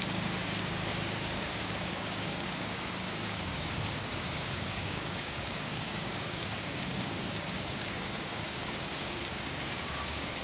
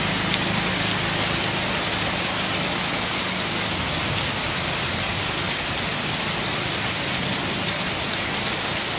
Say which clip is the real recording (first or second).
second